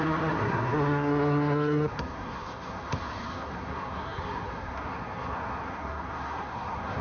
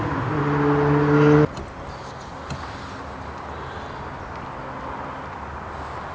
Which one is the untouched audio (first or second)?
second